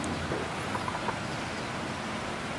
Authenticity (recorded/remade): recorded